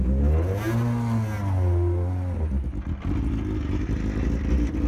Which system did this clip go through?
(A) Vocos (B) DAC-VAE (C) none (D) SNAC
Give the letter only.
C